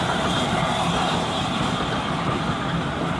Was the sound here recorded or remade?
recorded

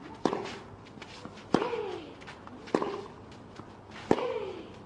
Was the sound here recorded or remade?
recorded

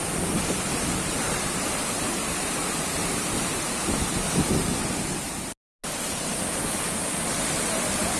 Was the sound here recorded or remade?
recorded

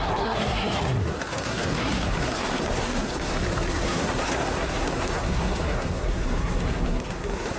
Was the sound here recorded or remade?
remade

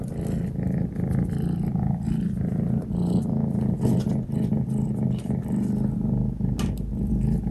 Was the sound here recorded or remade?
recorded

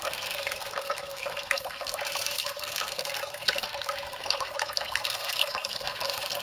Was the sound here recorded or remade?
remade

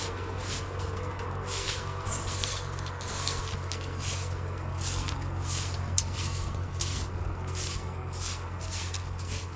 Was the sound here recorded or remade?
remade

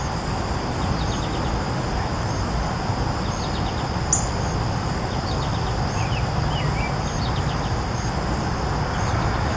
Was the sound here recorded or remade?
recorded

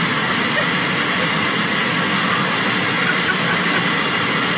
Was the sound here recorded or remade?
recorded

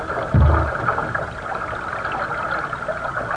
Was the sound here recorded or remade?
recorded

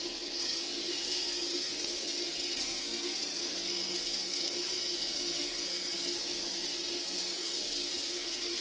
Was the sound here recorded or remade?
remade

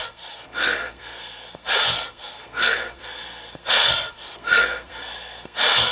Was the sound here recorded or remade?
remade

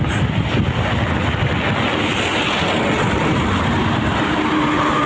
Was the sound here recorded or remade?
recorded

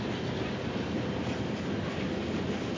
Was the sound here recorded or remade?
recorded